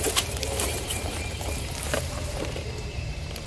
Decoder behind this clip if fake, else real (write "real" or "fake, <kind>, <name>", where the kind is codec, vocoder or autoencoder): fake, vocoder, BigVGAN v2